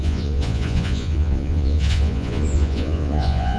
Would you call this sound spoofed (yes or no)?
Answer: yes